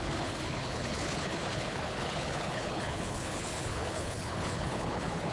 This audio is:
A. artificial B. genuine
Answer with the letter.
A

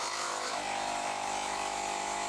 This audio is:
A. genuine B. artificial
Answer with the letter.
B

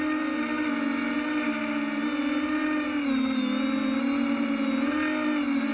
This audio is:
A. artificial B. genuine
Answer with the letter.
B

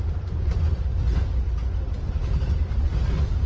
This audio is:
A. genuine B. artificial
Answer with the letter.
A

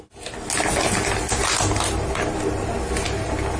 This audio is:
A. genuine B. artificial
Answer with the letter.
A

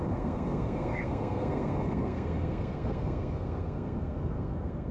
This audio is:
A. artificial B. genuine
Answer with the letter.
A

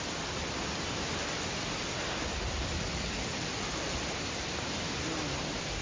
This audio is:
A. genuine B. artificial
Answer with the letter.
A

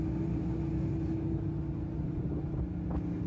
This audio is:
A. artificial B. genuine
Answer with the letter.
B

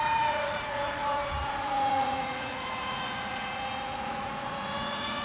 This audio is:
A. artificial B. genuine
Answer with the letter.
A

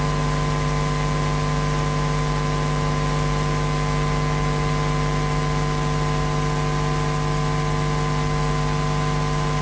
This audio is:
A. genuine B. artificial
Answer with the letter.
A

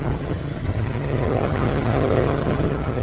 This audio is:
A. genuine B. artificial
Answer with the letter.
B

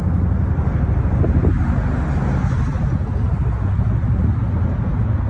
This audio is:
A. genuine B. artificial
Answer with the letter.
A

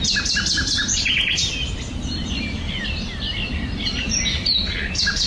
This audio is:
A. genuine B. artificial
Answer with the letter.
A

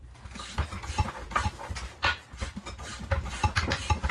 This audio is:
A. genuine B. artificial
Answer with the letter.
A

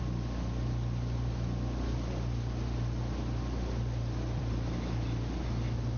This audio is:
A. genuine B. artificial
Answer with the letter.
A